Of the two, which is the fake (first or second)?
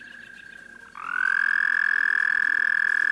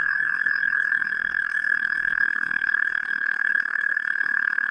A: second